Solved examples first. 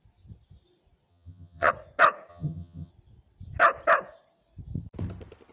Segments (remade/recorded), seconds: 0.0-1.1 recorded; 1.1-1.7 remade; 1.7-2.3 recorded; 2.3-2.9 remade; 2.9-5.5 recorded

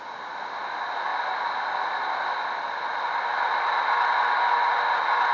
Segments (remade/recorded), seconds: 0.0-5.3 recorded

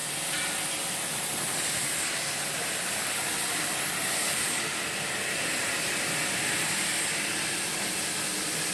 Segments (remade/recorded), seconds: 0.0-8.7 recorded

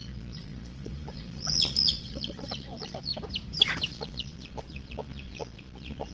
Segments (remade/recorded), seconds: 0.0-3.1 remade; 3.1-3.9 recorded; 3.9-6.1 remade

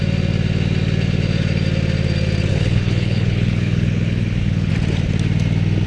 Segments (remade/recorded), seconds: 0.0-2.5 recorded; 2.5-4.7 remade; 4.7-5.9 recorded

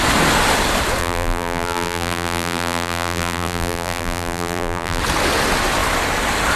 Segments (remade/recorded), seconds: 0.0-1.0 recorded; 1.0-5.0 remade; 5.0-6.6 recorded

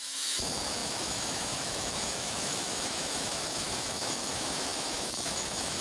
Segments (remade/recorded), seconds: 0.0-5.8 remade